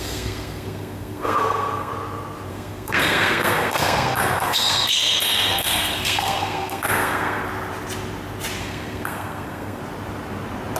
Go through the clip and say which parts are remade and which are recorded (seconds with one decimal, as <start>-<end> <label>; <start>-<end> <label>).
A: 0.0-1.9 remade; 1.9-2.5 recorded; 2.5-7.4 remade; 7.4-8.6 recorded; 8.6-9.8 remade; 9.8-10.8 recorded